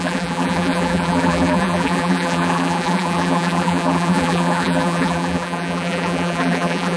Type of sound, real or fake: fake